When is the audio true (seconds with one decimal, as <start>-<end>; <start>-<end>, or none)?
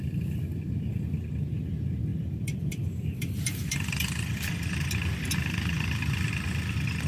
0.0-2.1; 6.3-7.1